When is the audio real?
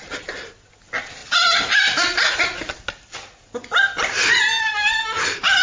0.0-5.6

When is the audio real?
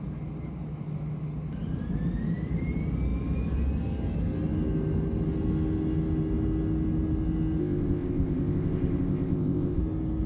0.0-7.6; 9.8-10.3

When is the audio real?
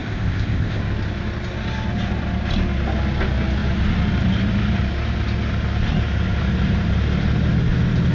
0.8-8.1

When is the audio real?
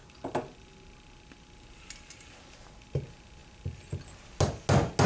0.0-5.1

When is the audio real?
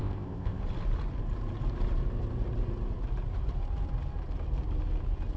0.6-5.4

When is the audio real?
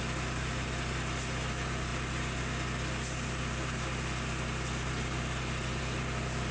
0.0-6.5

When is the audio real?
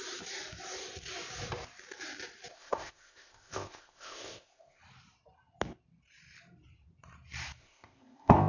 0.0-2.5; 4.8-7.6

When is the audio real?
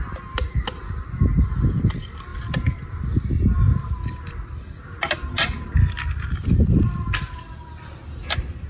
0.0-8.7